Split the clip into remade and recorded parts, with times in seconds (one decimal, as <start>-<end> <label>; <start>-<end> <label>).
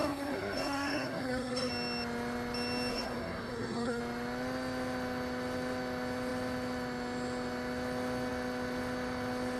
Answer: 0.0-1.7 remade; 1.7-2.9 recorded; 2.9-4.0 remade; 4.0-9.6 recorded